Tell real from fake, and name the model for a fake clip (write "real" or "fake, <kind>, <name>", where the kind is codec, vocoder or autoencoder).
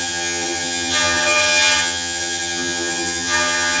fake, vocoder, HiFi-GAN